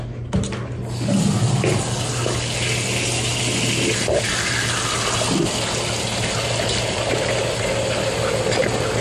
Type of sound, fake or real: real